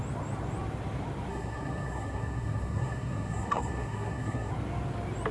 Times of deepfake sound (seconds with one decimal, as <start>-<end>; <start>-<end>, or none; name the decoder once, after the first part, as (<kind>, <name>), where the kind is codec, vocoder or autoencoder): 1.3-4.5 (codec, SNAC)

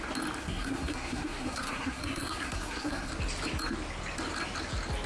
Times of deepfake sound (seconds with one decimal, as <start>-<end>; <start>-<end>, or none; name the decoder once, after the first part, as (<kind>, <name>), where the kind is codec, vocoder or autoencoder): 0.4-3.1 (codec, SNAC)

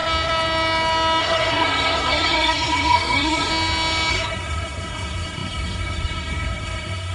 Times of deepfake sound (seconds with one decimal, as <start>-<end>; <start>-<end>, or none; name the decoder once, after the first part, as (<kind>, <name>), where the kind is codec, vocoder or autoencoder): 1.2-3.5 (codec, SNAC); 4.1-7.1

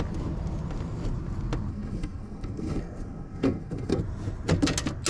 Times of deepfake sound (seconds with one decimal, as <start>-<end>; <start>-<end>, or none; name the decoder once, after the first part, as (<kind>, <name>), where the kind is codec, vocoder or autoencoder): 1.7-4.0 (codec, SNAC)

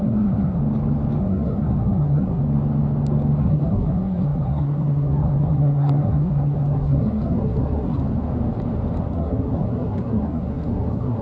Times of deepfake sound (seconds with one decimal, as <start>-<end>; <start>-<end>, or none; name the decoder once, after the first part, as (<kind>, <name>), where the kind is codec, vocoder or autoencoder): 0.0-0.6 (codec, SNAC); 1.2-2.4; 3.4-8.0; 9.0-11.2

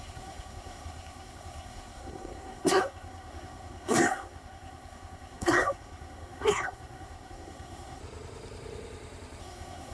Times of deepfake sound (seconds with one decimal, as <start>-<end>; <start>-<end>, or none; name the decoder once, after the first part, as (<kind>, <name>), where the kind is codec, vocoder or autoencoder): 0.0-8.0 (codec, SNAC); 9.4-9.9